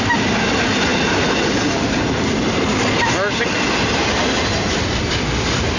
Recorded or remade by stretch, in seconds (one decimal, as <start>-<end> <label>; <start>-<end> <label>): 0.0-0.9 recorded; 0.9-3.8 remade; 3.8-5.8 recorded